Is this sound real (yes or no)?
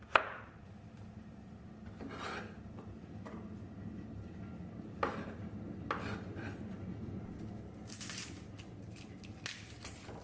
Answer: yes